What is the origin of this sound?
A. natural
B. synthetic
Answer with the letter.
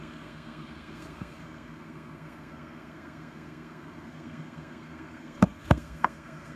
B